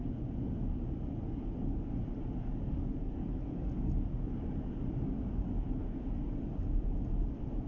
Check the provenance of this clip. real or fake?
real